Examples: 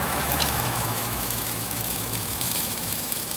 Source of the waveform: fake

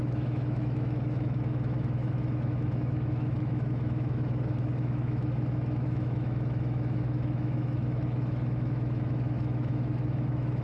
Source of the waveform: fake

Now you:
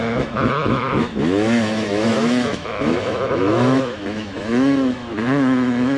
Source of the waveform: fake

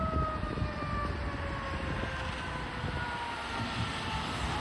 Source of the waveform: real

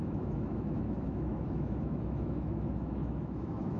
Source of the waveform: fake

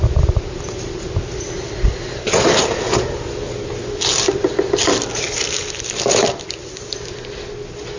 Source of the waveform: real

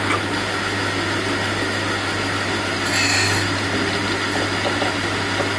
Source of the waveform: real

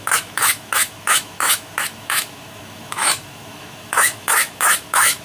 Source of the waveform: fake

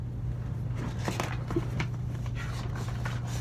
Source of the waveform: real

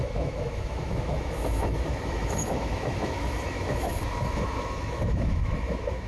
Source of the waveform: fake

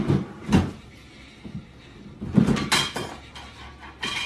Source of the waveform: real